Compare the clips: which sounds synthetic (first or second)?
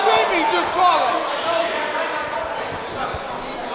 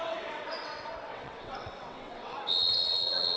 second